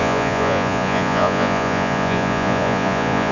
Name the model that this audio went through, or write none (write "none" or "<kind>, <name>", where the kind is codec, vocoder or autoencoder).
vocoder, Vocos